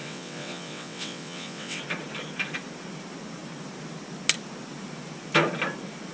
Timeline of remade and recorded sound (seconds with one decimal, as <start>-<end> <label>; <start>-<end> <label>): 0.0-1.8 remade; 1.8-6.1 recorded